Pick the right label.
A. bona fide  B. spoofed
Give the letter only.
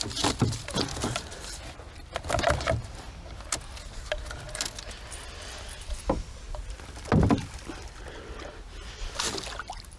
A